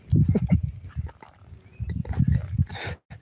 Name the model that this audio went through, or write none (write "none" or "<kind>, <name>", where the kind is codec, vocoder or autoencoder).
none